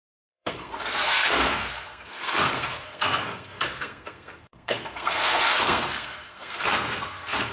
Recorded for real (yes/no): no